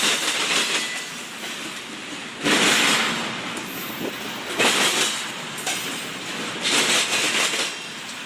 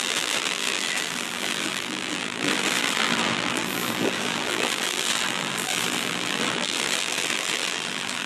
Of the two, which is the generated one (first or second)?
second